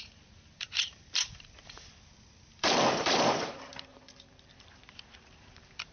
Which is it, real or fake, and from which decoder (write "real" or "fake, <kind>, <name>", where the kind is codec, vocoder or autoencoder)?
fake, vocoder, BigVGAN v2